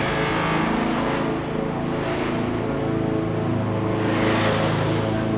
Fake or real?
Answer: real